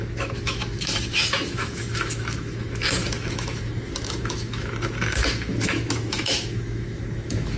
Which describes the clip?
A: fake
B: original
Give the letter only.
A